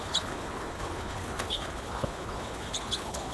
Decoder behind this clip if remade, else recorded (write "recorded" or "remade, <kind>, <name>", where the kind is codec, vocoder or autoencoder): remade, codec, HILCodec